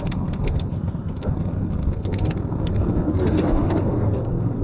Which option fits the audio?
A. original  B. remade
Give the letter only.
B